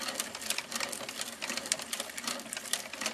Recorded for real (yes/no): no